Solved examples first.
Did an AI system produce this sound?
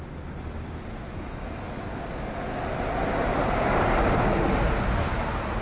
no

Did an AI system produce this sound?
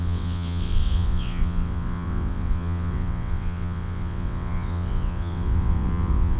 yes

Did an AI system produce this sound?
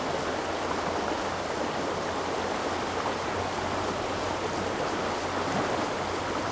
no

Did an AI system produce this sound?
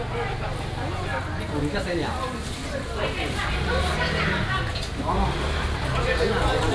no